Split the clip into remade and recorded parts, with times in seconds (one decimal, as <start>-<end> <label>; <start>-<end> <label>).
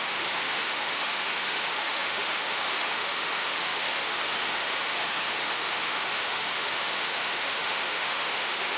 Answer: 0.0-8.8 remade